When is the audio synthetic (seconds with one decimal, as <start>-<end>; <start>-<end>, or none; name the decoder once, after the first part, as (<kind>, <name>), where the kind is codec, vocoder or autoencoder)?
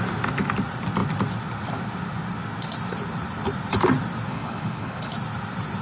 4.3-5.1 (codec, HILCodec)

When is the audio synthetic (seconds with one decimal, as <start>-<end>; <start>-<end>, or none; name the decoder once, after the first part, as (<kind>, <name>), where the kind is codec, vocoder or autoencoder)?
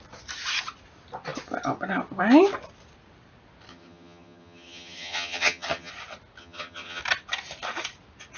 3.7-5.9 (vocoder, HiFi-GAN); 6.4-7.0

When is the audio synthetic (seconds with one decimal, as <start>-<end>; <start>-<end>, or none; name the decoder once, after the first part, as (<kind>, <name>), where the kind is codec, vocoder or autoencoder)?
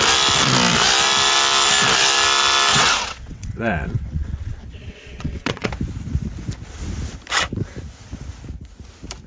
2.7-5.7 (vocoder, WaveNeXt)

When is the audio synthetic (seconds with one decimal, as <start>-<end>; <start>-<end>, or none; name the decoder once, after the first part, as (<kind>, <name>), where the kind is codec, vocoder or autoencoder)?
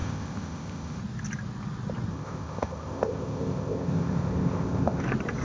0.0-1.0 (codec, ZipCodec); 2.1-5.0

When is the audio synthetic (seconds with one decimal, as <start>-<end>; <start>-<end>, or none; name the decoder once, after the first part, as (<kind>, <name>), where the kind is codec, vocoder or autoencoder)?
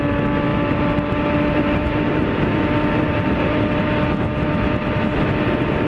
0.5-3.9 (vocoder, BigVGAN v2)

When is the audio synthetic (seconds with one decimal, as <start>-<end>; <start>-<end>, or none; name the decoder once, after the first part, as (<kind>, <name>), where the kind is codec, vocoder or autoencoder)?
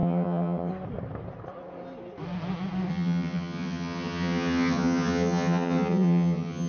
0.0-0.7 (vocoder, HiFi-GAN); 2.9-6.7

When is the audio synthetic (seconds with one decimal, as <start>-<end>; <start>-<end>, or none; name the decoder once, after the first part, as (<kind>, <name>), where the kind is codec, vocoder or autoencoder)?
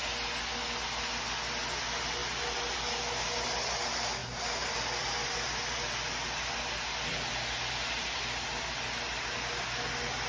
none